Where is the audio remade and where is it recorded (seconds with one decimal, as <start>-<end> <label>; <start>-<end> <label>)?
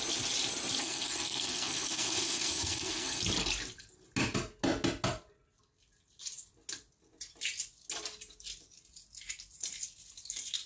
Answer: 0.0-0.8 recorded; 0.8-3.2 remade; 3.2-10.7 recorded